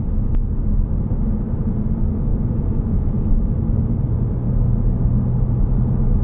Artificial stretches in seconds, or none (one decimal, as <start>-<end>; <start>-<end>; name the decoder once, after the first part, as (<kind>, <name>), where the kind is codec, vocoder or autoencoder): 2.3-3.2 (vocoder, Vocos)